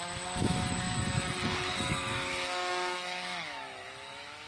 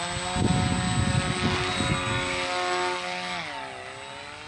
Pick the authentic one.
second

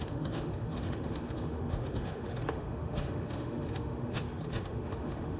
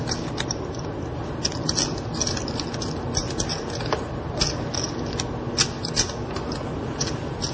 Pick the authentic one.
second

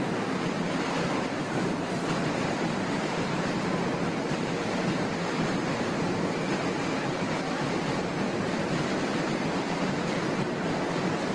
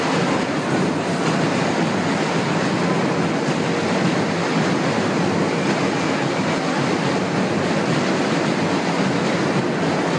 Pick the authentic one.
second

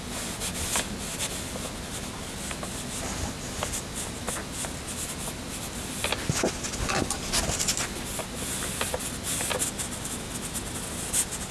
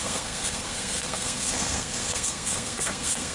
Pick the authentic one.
first